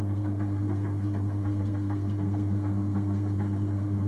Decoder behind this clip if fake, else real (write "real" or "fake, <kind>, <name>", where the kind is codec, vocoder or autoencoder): fake, codec, SNAC